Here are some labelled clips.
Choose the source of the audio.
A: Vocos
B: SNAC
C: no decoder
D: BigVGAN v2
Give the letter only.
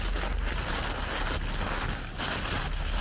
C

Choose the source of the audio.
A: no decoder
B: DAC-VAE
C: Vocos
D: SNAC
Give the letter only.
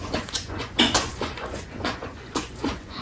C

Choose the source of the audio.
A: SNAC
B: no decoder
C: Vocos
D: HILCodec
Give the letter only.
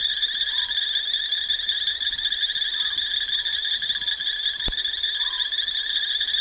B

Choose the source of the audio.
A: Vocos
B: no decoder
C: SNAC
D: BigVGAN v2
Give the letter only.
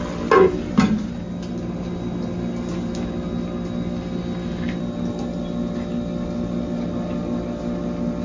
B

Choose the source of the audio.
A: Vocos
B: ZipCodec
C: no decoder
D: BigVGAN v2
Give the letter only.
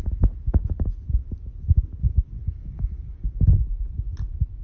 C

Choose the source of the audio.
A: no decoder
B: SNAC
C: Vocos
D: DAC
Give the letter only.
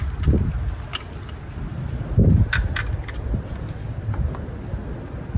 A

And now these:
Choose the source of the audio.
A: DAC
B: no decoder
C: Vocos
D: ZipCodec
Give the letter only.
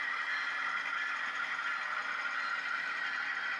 B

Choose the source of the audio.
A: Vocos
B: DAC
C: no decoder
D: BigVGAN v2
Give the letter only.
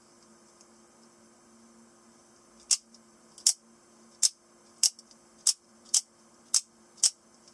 C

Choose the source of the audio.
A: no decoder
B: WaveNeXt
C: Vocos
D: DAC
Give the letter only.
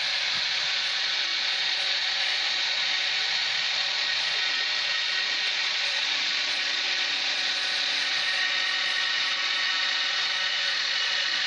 C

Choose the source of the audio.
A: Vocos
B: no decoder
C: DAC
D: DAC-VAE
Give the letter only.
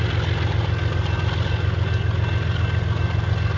B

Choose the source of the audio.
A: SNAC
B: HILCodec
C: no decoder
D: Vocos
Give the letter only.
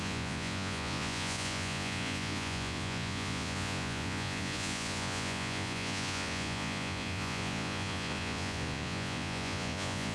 D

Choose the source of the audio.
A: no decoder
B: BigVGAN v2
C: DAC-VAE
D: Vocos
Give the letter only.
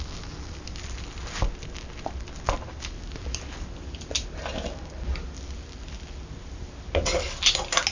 A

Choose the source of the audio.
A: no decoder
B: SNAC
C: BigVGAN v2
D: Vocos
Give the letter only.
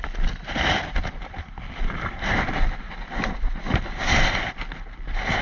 A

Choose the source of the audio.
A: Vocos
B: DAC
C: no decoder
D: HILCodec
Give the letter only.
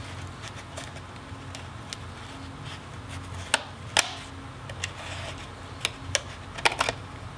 C